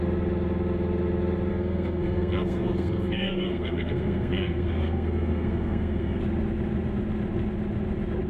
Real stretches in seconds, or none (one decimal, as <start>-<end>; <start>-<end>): 0.0-1.5; 6.2-8.3

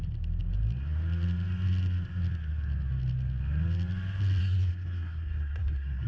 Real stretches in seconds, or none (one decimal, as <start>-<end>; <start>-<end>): 0.0-4.4

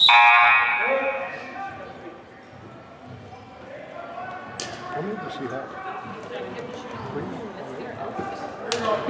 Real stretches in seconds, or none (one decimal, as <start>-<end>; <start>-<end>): 0.0-0.7; 1.7-9.1

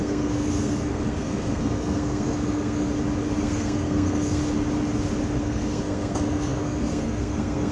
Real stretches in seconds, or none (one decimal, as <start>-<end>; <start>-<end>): 2.9-3.4; 4.4-5.4